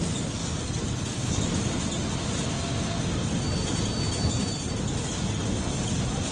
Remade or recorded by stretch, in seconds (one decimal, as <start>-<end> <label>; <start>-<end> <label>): 0.0-6.3 recorded